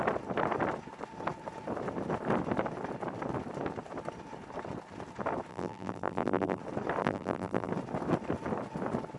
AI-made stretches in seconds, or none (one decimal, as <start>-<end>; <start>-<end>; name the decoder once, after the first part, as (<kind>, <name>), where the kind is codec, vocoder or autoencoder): 5.5-6.6 (vocoder, BigVGAN v2); 7.0-7.7